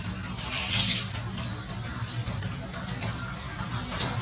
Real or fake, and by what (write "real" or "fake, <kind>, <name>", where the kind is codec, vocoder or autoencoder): real